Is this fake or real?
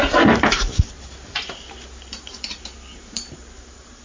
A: fake